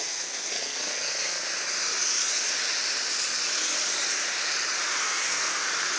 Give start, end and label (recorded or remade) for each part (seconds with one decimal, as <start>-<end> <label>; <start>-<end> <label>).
0.0-1.4 remade; 1.4-5.0 recorded; 5.0-5.5 remade; 5.5-6.0 recorded